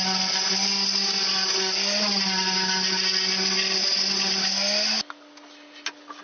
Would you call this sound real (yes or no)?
yes